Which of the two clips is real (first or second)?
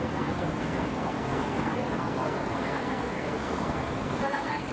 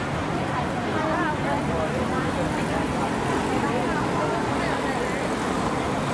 second